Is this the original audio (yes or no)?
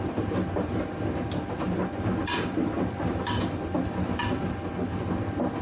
yes